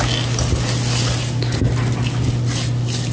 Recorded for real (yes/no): yes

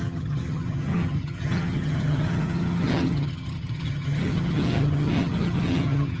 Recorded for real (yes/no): no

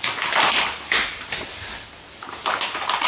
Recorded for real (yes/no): yes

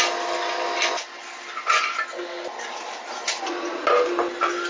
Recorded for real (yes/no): yes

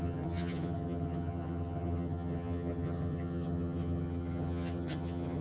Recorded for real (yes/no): no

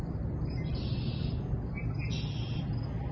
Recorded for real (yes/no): yes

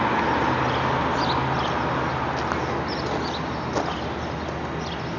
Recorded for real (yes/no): yes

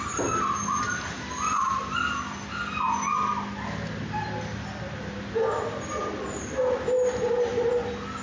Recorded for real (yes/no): yes